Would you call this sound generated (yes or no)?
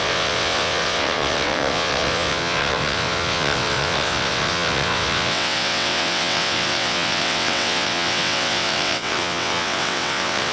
yes